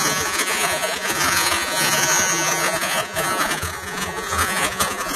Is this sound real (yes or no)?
no